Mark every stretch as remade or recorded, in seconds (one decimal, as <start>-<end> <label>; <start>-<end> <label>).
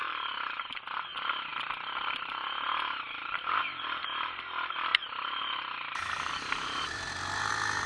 0.0-0.8 remade; 0.8-1.5 recorded; 1.5-3.6 remade; 3.6-4.9 recorded; 4.9-7.5 remade; 7.5-7.9 recorded